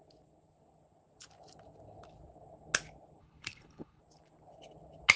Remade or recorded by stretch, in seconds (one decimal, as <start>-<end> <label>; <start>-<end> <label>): 0.0-3.2 recorded; 3.2-4.0 remade; 4.0-5.2 recorded